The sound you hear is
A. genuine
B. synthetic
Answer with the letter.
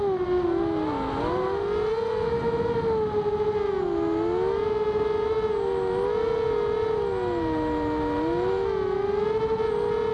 A